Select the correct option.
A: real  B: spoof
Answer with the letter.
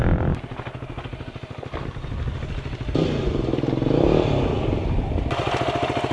A